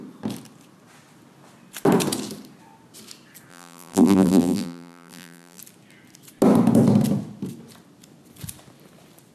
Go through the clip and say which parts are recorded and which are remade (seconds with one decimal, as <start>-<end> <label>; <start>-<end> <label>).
0.0-3.5 recorded; 3.5-5.6 remade; 5.6-9.3 recorded